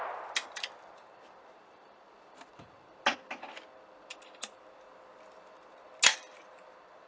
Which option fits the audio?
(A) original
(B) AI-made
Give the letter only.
A